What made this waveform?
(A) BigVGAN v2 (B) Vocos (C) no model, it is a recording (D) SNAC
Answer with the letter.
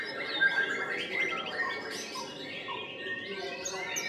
C